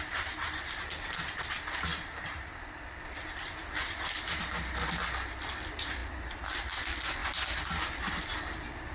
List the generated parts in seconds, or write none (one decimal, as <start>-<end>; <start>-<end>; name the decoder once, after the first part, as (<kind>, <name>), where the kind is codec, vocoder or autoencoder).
0.0-6.0 (vocoder, BigVGAN v2); 6.6-7.2; 8.1-8.9